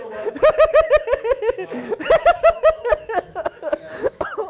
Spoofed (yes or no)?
yes